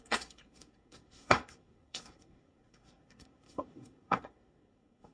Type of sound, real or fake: fake